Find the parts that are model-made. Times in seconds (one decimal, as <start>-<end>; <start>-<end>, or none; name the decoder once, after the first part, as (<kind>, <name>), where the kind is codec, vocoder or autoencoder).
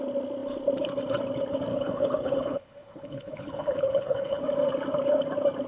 1.7-4.4 (codec, HILCodec)